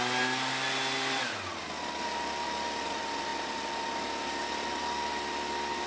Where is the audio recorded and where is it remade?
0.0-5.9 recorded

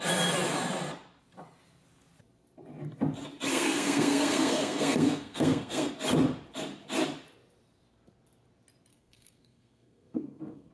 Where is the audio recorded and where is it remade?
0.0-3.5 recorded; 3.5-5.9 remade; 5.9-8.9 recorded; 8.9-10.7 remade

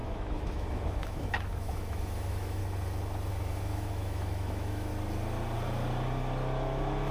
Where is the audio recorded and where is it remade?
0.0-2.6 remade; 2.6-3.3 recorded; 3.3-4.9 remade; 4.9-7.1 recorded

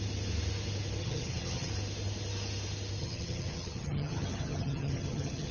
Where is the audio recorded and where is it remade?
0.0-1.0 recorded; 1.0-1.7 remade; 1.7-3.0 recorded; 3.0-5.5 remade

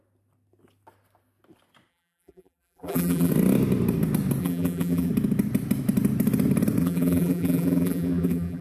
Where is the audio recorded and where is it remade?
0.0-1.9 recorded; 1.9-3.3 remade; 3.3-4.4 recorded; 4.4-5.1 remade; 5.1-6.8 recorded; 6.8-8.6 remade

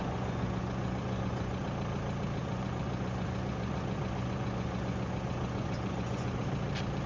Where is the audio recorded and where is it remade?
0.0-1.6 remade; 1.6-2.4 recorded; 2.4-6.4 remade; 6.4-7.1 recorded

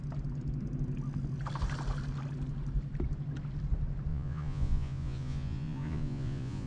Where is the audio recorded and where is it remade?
0.0-4.1 recorded; 4.1-6.7 remade

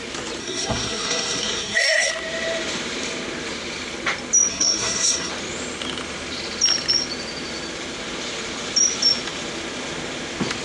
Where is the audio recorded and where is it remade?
0.0-0.4 recorded; 0.4-2.1 remade; 2.1-4.5 recorded; 4.5-5.3 remade; 5.3-10.6 recorded